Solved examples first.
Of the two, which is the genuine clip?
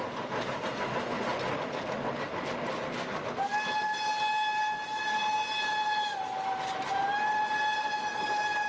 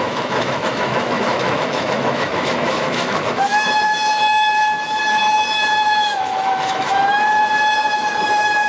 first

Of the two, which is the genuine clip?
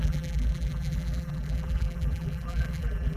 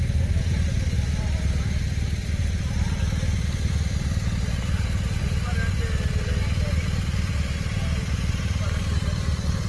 second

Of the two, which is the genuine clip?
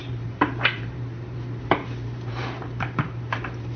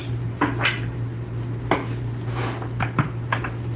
second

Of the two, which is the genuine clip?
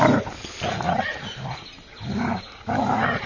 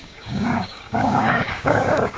first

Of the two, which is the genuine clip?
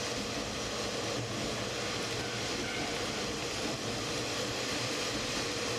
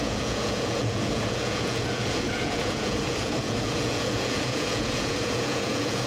first